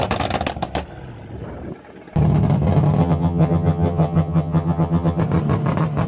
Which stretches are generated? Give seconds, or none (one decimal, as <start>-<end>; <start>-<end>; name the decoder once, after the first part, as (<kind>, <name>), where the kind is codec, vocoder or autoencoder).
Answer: 3.0-5.2 (vocoder, HiFi-GAN)